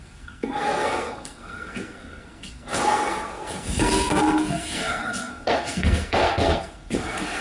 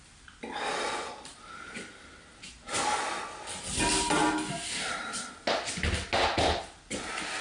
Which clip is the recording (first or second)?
second